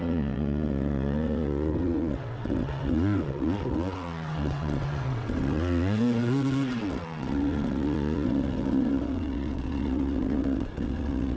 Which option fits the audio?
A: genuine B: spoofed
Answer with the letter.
B